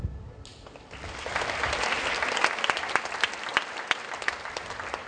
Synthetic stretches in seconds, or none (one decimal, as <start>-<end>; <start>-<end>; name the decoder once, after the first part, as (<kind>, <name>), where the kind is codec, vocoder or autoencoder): 3.5-5.1 (vocoder, BigVGAN v2)